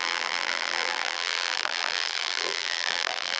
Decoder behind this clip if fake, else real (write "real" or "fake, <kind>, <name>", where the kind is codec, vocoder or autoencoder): fake, vocoder, BigVGAN v2